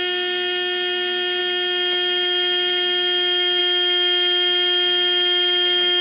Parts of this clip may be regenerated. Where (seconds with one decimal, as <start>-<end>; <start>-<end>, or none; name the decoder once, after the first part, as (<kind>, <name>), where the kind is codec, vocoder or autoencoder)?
0.0-6.0 (autoencoder, DAC-VAE)